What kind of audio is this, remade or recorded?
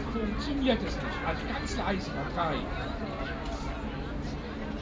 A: recorded